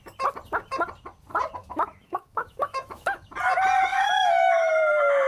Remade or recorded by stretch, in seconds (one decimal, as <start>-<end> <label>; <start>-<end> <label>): 0.0-1.6 recorded; 1.6-3.3 remade; 3.3-3.9 recorded; 3.9-4.7 remade; 4.7-5.3 recorded